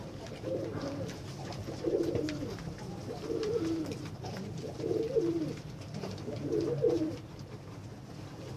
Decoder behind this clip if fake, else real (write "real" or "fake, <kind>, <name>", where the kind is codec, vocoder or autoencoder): fake, vocoder, BigVGAN v2